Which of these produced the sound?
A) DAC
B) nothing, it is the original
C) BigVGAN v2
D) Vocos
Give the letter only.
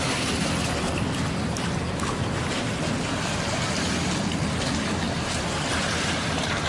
B